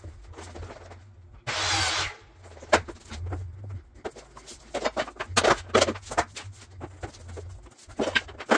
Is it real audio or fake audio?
real